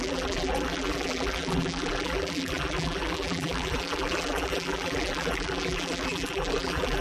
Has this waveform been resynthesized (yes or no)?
yes